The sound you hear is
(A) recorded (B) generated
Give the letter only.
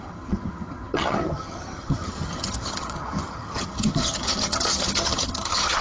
B